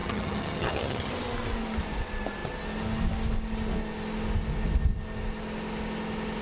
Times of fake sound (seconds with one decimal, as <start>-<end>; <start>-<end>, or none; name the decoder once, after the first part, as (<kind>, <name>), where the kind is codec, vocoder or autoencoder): 0.0-1.1 (vocoder, HiFi-GAN)